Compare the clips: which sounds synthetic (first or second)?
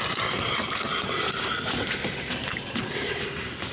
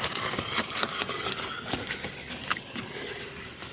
second